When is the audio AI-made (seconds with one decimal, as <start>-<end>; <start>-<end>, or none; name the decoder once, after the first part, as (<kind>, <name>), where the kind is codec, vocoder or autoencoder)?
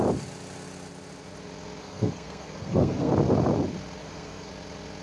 1.8-3.1 (codec, SNAC); 4.0-4.5